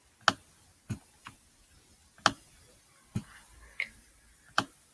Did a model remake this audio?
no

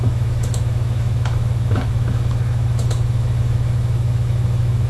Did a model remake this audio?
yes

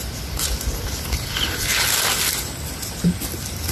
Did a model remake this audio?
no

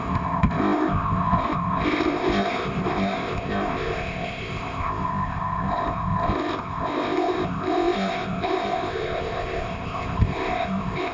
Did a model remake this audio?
yes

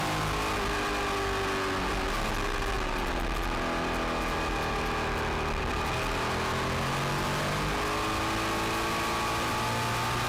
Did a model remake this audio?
no